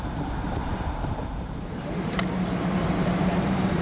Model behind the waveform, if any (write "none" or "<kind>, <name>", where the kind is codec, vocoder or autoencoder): vocoder, BigVGAN v2